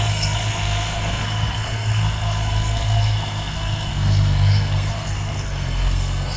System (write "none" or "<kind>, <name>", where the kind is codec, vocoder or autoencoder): codec, SNAC